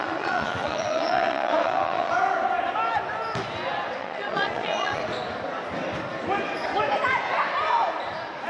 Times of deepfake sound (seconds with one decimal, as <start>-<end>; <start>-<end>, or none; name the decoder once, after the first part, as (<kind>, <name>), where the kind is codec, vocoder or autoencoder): 0.0-2.1 (vocoder, Vocos); 4.0-5.0